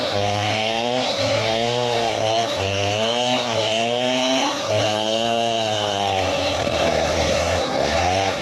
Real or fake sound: fake